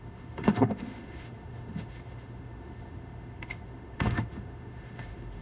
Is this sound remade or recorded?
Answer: remade